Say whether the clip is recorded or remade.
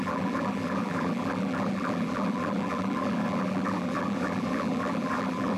remade